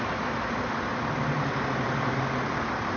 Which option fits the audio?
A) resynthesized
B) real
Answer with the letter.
B